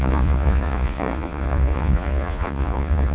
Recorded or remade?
remade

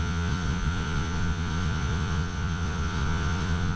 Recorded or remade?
remade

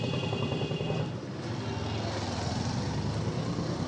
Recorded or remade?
recorded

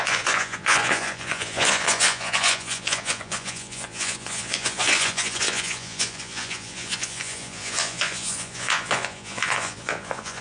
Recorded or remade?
remade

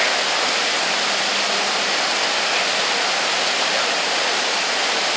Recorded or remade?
recorded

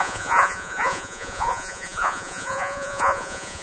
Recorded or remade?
remade